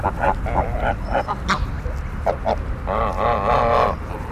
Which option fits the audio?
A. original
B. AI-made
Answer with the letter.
A